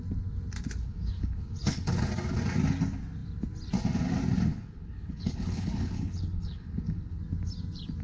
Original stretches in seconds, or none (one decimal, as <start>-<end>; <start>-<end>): 0.0-0.8; 2.1-4.5; 7.2-8.0